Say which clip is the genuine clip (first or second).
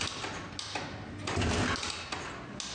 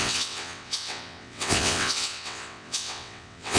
first